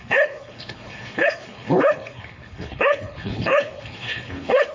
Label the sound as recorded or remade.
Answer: remade